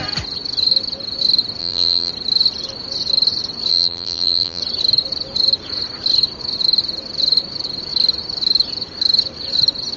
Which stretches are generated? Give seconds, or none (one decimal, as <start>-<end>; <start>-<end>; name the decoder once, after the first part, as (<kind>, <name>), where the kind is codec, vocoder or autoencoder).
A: 1.6-2.1 (vocoder, BigVGAN v2); 3.7-4.6